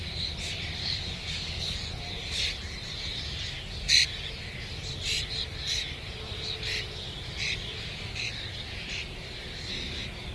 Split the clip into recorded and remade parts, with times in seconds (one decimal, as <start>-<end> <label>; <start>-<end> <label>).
0.0-0.8 recorded; 0.8-2.0 remade; 2.0-10.3 recorded